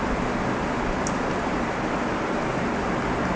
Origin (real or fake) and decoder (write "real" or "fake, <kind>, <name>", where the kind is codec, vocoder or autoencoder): real